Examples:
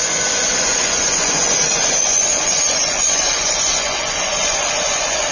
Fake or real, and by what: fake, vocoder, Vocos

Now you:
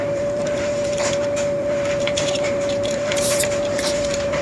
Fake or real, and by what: fake, vocoder, BigVGAN v2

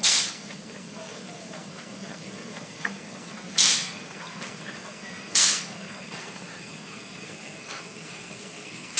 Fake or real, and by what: fake, codec, SNAC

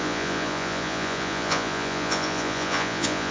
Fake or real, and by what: fake, vocoder, Vocos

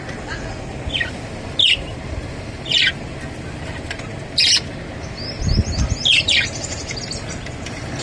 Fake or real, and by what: real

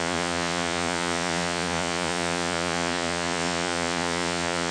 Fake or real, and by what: fake, vocoder, Vocos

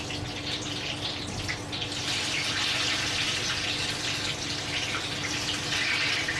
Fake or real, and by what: real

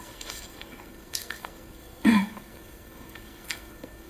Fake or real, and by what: fake, codec, SNAC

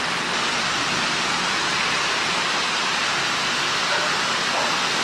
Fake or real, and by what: real